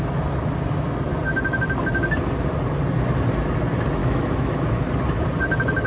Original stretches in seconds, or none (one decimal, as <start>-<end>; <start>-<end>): 0.0-4.0; 4.8-5.9